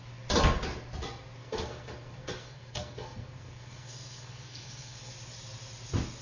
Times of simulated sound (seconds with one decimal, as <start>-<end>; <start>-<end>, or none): 1.4-5.1

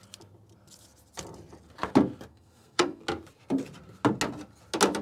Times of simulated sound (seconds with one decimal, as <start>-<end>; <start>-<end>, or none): 2.3-3.0

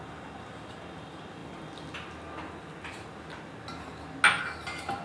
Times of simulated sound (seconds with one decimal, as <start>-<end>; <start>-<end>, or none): none

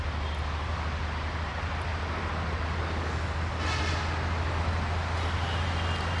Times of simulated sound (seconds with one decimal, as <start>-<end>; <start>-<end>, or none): none

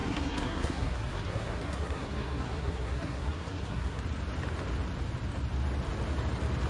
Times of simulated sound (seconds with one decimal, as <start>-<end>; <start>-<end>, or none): 0.0-4.0

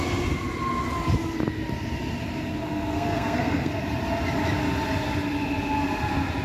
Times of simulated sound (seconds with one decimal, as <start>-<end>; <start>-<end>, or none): 2.6-3.7